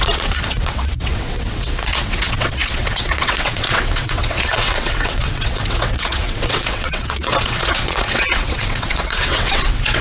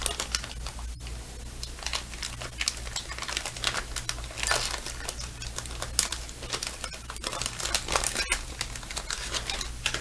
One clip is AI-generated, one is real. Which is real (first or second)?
second